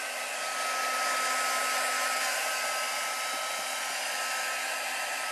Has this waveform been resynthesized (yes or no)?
no